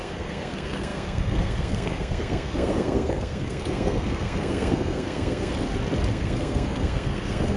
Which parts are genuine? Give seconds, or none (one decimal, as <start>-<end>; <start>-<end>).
5.5-6.1